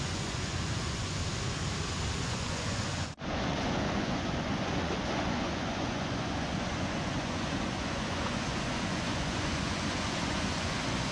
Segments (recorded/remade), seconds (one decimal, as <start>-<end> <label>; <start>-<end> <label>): 0.0-1.2 remade; 1.2-2.2 recorded; 2.2-11.1 remade